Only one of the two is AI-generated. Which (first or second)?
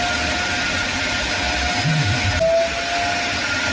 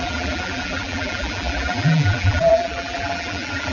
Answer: second